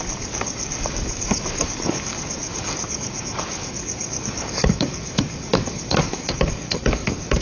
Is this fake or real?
fake